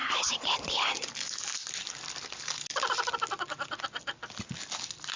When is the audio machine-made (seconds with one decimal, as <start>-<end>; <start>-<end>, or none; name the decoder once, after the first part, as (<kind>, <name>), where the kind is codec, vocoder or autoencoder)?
none